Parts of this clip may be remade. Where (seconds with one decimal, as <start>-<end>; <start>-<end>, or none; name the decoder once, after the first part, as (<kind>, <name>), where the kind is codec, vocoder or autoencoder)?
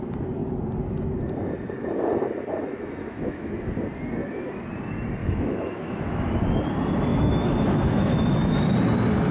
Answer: 3.0-3.5 (autoencoder, DAC-VAE); 5.2-6.3; 7.1-8.6